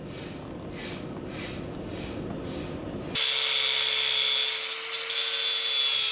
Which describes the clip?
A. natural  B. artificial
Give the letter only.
A